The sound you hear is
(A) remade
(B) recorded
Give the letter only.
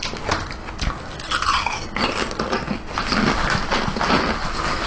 B